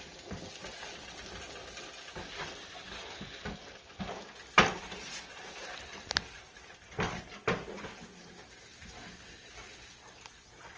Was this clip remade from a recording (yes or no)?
no